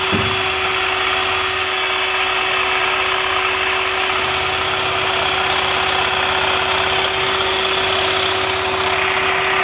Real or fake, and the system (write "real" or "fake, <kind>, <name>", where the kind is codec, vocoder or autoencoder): real